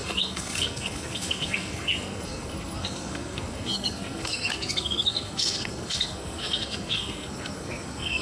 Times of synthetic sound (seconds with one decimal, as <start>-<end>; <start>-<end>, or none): 0.0-8.2